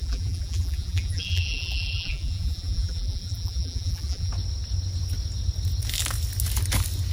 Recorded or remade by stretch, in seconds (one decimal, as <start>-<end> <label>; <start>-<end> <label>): 0.0-4.3 remade; 4.3-7.1 recorded